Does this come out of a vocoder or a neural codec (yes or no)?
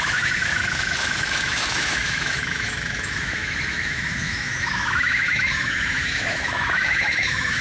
yes